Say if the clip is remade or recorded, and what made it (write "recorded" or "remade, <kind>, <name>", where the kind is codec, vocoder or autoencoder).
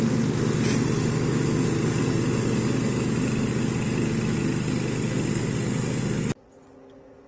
recorded